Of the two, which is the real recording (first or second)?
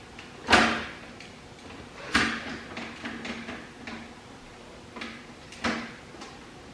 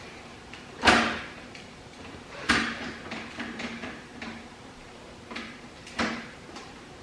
first